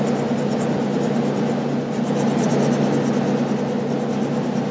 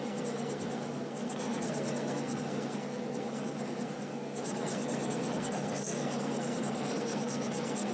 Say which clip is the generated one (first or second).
second